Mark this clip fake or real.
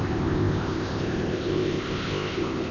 fake